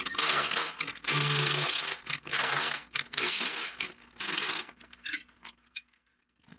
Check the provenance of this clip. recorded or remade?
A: remade